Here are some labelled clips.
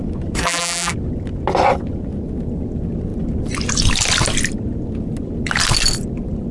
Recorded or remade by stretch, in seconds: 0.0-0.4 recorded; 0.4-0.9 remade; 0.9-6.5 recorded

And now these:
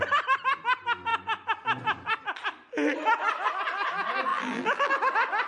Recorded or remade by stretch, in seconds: 0.0-4.3 recorded; 4.3-4.9 remade; 4.9-5.5 recorded

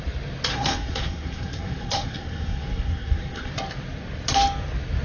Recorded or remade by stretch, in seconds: 0.0-0.5 recorded; 0.5-3.5 remade; 3.5-5.0 recorded